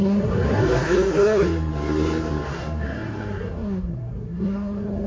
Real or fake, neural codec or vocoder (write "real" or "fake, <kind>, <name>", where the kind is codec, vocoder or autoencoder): fake, codec, SNAC